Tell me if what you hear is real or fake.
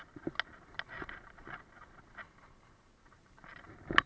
real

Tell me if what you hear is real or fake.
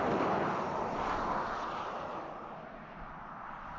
real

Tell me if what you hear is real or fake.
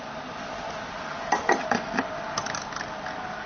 real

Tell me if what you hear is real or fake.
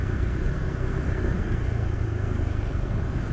fake